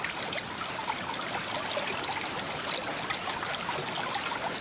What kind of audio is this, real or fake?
real